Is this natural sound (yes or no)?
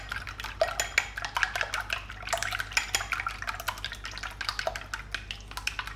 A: yes